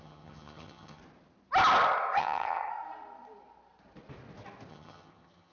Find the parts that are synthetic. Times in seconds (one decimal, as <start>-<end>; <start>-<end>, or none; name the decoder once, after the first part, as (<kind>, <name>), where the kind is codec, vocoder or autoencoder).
0.0-1.0 (vocoder, HiFi-GAN); 2.2-2.7; 4.7-5.5